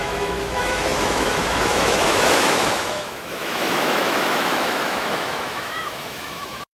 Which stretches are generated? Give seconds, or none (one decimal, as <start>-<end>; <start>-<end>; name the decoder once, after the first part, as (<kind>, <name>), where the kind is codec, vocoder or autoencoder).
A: 0.0-6.8 (autoencoder, DAC-VAE)